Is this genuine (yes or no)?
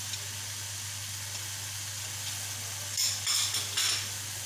yes